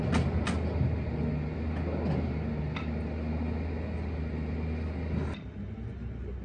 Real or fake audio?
real